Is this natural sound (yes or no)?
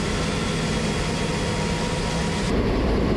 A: yes